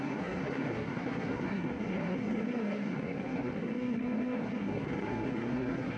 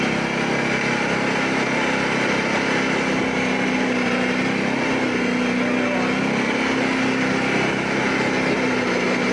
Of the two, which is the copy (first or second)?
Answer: first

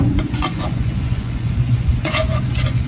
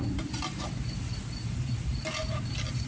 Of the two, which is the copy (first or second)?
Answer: first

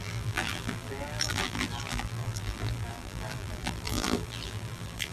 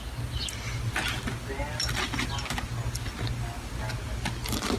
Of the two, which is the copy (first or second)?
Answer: first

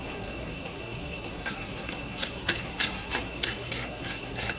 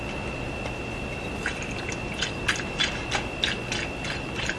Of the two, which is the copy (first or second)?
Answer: first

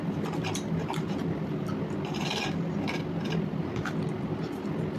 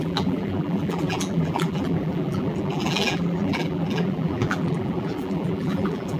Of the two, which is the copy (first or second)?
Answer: second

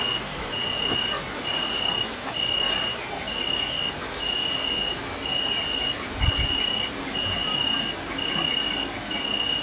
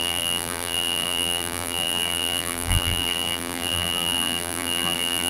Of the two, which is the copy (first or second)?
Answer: second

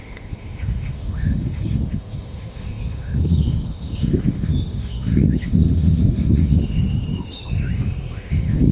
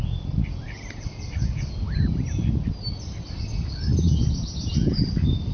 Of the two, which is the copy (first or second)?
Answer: first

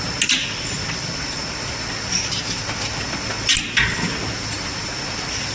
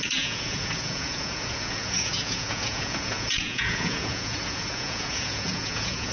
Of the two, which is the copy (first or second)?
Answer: second